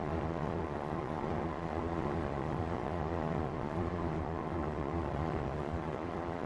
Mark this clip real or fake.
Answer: fake